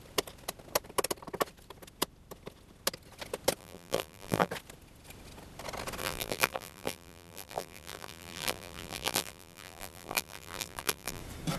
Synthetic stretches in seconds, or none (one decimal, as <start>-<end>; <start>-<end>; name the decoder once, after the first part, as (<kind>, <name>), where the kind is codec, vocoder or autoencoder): 3.6-4.5 (vocoder, BigVGAN v2); 6.0-11.2